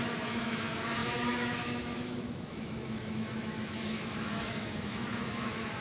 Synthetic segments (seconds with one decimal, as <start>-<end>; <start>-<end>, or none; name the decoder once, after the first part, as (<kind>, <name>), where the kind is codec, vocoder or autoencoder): 0.0-5.8 (autoencoder, DAC-VAE)